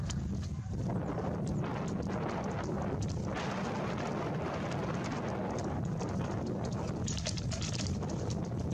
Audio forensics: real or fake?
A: real